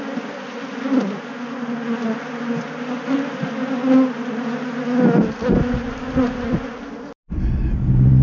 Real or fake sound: real